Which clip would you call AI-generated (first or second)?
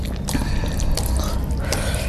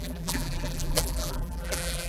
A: second